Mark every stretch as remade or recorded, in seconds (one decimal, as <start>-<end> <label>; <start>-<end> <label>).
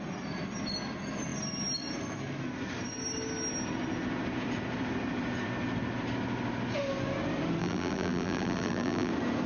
0.0-7.6 recorded; 7.6-9.1 remade; 9.1-9.5 recorded